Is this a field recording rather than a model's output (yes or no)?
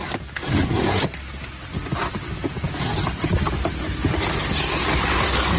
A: yes